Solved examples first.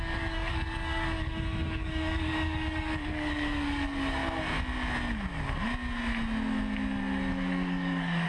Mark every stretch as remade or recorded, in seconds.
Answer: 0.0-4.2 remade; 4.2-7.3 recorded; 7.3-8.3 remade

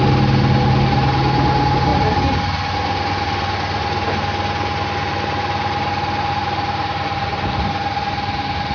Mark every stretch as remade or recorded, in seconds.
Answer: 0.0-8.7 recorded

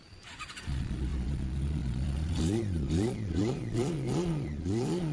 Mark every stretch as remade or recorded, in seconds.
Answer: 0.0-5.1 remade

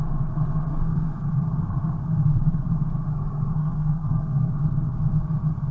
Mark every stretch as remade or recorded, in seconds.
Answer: 0.0-0.7 recorded; 0.7-1.3 remade; 1.3-3.1 recorded; 3.1-4.5 remade; 4.5-5.7 recorded

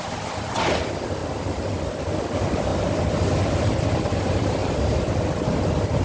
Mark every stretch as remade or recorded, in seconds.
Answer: 0.0-1.2 remade; 1.2-2.2 recorded; 2.2-4.6 remade; 4.6-6.0 recorded